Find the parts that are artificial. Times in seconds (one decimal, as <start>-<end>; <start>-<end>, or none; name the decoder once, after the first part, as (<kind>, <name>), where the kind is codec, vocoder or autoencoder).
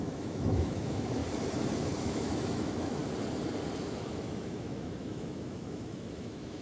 0.0-1.2 (autoencoder, DAC-VAE); 2.0-3.0; 3.8-6.6